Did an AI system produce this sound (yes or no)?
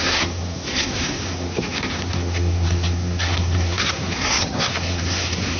yes